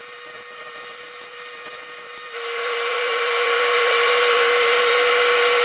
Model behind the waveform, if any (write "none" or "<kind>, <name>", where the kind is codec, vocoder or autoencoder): vocoder, BigVGAN v2